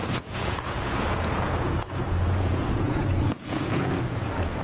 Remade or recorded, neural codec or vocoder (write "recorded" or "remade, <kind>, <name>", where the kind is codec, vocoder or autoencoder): remade, vocoder, Vocos